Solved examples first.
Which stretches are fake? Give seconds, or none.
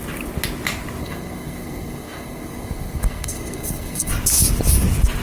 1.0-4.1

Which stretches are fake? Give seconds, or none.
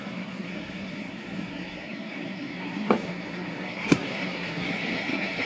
0.0-5.5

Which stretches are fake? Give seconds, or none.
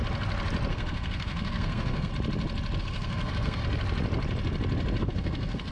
0.7-2.1; 2.8-3.6; 5.0-5.7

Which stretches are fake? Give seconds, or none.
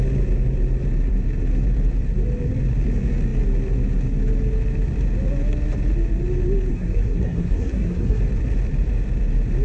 6.7-8.2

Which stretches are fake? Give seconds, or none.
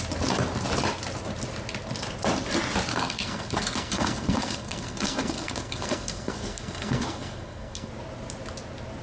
2.9-7.9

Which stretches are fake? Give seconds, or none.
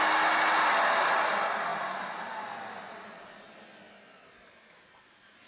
none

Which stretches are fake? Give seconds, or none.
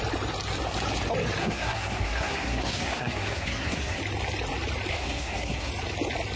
1.4-4.0; 4.9-5.7